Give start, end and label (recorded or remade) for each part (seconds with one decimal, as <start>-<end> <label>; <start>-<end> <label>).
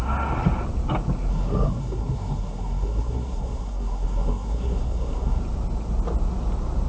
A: 0.0-1.3 recorded; 1.3-5.4 remade; 5.4-6.9 recorded